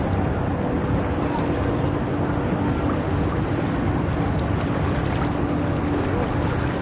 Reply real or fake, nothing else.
real